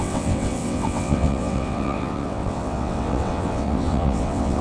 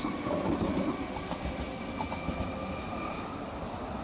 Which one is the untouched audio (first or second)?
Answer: second